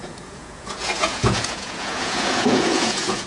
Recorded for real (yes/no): no